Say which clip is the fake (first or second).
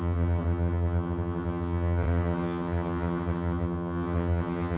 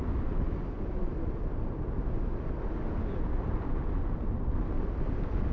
first